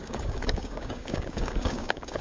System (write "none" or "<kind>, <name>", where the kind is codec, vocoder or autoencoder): codec, DAC